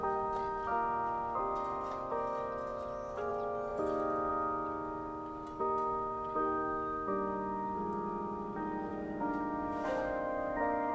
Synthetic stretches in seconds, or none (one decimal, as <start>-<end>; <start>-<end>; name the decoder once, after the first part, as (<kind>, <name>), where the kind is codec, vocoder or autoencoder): 8.9-10.9 (autoencoder, DAC-VAE)